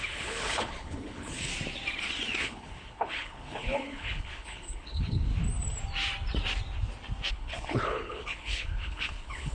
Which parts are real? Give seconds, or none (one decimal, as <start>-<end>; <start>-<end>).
1.5-2.4; 5.3-7.3

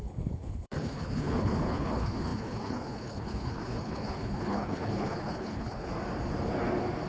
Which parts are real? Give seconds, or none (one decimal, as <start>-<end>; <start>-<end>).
5.9-7.1

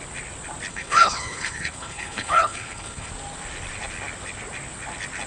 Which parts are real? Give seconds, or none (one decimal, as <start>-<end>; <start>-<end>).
0.0-0.7; 3.1-5.3

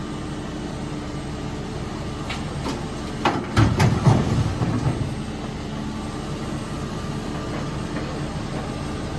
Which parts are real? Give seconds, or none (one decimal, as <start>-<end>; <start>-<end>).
0.0-9.2